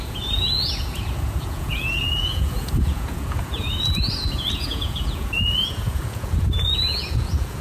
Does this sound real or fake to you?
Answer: fake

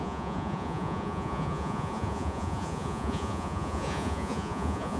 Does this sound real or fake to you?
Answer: fake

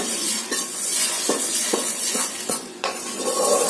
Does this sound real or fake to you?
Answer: fake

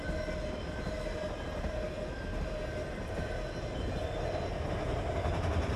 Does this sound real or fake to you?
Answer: real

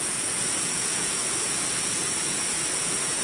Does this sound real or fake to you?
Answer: fake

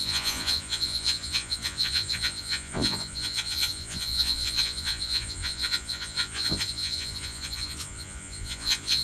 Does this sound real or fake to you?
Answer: fake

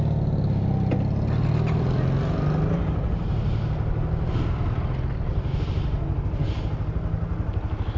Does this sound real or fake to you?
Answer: real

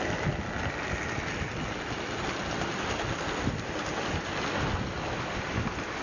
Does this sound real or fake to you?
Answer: real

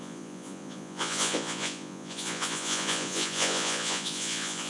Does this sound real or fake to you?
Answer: fake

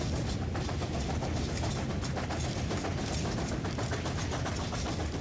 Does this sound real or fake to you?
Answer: real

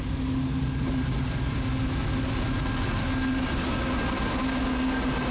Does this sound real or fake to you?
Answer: real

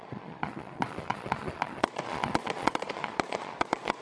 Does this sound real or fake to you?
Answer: fake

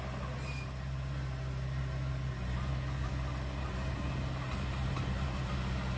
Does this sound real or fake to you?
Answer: real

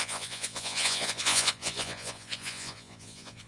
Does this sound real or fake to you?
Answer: fake